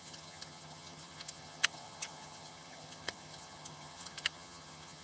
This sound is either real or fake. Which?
fake